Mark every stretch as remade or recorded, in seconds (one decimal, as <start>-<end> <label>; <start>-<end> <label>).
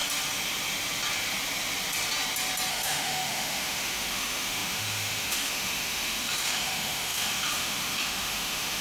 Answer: 0.0-2.7 recorded; 2.7-8.8 remade